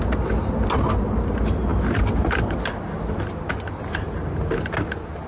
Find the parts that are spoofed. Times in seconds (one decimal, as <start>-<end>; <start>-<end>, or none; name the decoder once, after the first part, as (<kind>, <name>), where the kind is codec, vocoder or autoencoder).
none